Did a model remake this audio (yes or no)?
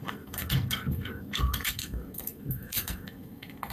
yes